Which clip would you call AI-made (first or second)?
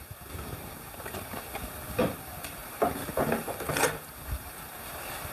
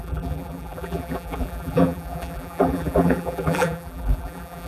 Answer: second